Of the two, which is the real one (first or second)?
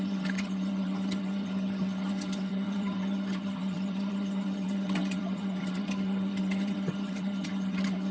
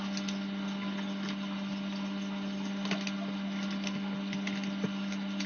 second